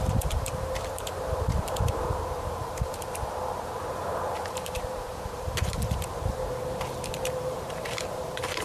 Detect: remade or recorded remade